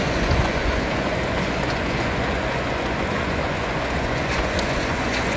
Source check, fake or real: fake